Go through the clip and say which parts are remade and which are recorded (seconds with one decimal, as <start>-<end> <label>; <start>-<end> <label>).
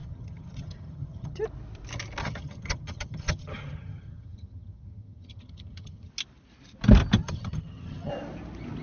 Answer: 0.0-1.4 remade; 1.4-2.2 recorded; 2.2-6.1 remade; 6.1-7.2 recorded; 7.2-8.1 remade; 8.1-8.8 recorded